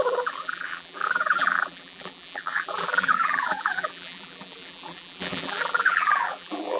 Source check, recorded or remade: remade